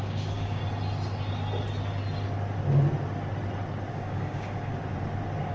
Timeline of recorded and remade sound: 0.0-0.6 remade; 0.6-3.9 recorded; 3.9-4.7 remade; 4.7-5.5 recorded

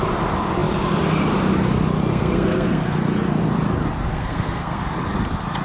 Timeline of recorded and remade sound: 0.0-2.1 recorded; 2.1-2.8 remade; 2.8-4.1 recorded; 4.1-4.8 remade; 4.8-5.6 recorded